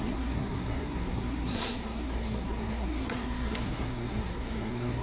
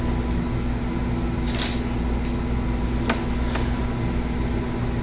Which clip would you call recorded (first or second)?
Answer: second